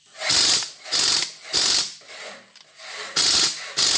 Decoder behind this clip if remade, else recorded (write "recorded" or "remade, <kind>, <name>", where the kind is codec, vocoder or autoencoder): recorded